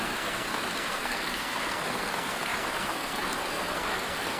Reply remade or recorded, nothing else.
remade